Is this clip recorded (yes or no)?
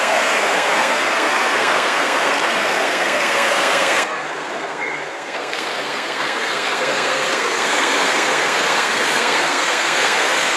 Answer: no